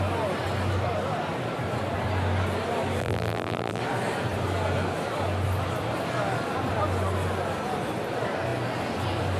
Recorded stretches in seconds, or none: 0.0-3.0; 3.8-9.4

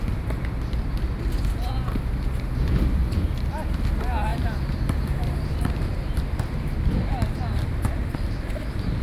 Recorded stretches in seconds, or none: 0.0-3.0; 3.5-4.3; 6.2-9.0

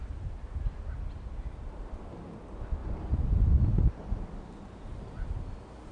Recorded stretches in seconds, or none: 0.0-2.8; 3.9-5.9